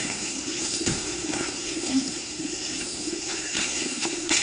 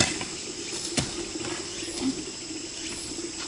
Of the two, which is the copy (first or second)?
first